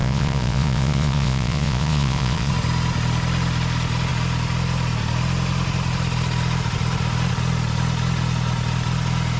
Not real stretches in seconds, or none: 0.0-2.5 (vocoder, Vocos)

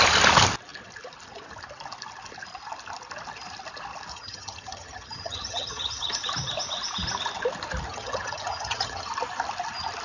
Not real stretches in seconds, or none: 4.1-6.1 (vocoder, HiFi-GAN); 7.9-9.1

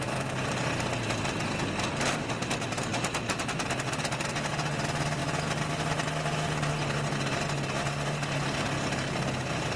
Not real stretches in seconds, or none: none

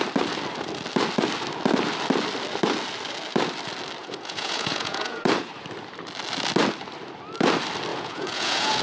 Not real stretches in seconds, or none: 4.0-5.2 (vocoder, Vocos); 7.9-8.8

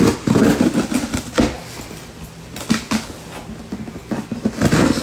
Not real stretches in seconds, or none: none